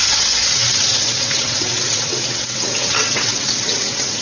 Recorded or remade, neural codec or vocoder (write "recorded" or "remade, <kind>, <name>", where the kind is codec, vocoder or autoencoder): remade, vocoder, WaveNeXt